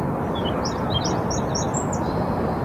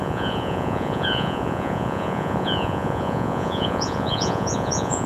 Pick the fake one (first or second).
second